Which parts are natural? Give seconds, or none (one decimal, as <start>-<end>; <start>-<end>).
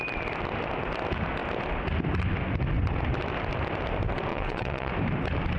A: 0.0-4.3; 4.9-5.6